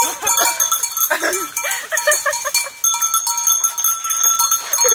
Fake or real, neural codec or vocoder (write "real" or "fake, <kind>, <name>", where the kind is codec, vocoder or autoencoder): real